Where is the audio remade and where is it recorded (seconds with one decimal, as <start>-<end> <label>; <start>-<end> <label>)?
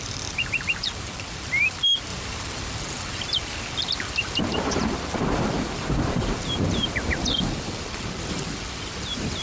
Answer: 0.0-9.4 remade